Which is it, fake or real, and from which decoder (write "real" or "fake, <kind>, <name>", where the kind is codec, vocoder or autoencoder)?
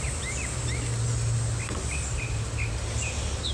real